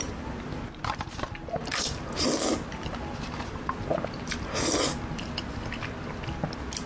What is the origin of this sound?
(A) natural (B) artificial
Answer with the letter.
A